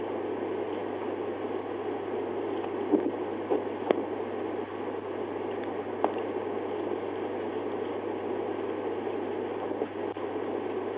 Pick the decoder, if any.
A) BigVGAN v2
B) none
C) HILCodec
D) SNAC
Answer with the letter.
B